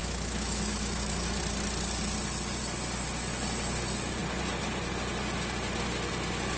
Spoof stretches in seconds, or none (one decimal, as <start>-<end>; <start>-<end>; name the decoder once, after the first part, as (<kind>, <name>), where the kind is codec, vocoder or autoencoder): 0.0-1.4 (autoencoder, DAC-VAE)